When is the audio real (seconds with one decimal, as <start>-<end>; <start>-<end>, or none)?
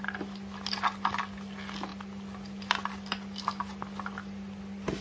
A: 0.0-5.0